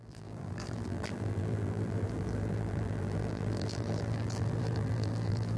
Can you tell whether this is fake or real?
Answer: fake